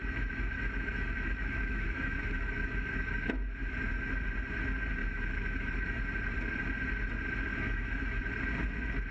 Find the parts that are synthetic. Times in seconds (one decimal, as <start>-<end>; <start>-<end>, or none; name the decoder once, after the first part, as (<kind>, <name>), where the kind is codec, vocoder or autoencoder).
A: 0.0-4.1 (autoencoder, DAC-VAE); 5.0-6.0; 7.5-8.2